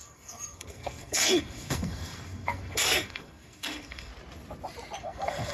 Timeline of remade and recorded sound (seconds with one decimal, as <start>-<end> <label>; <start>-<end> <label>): 0.0-4.1 remade; 4.1-5.0 recorded; 5.0-5.5 remade